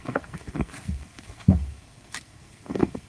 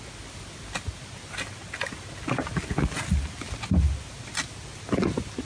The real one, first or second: second